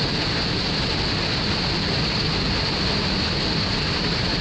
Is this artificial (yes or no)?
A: no